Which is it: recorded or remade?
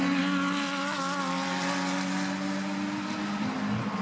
recorded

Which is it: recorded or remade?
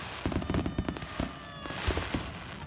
recorded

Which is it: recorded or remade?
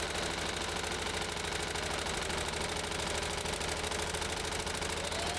recorded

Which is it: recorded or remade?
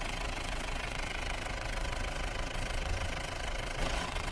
remade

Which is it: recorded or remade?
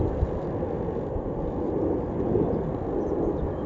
recorded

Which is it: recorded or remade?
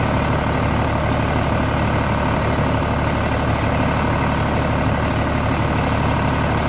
recorded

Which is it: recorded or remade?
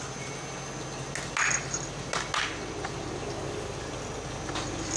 recorded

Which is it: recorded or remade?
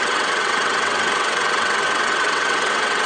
remade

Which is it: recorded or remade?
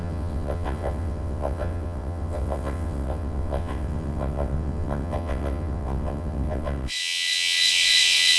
remade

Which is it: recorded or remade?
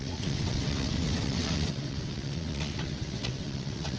remade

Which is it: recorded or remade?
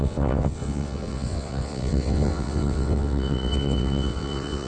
remade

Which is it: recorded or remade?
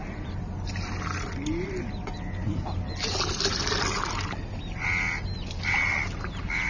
recorded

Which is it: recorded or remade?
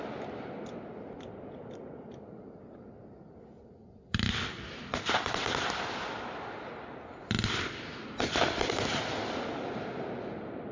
recorded